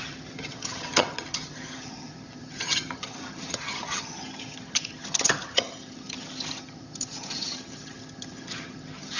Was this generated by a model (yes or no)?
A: yes